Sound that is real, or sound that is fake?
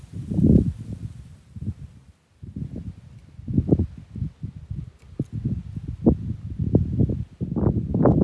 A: real